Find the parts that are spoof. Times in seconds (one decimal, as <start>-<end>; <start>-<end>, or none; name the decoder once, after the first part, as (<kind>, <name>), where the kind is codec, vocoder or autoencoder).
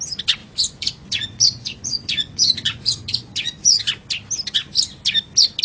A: 0.4-3.8 (vocoder, Vocos)